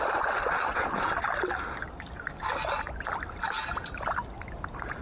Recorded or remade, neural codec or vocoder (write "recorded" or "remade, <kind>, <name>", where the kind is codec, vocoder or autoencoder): recorded